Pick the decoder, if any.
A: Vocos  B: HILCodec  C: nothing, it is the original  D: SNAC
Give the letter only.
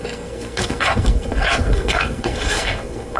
D